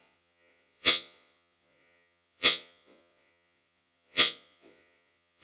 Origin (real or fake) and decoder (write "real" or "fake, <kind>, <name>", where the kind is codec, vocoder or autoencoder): fake, vocoder, Vocos